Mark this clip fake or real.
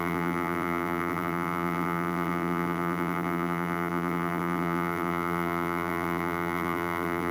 fake